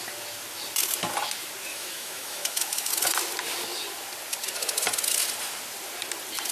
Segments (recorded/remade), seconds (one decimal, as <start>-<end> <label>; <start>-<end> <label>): 0.0-1.7 recorded; 1.7-2.9 remade; 2.9-6.5 recorded